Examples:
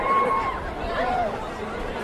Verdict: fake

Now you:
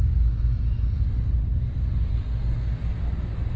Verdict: real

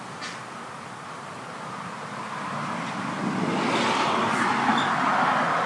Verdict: real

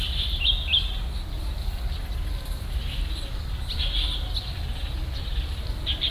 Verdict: real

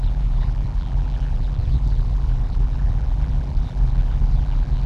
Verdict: fake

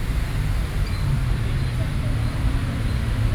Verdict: real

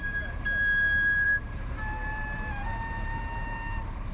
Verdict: fake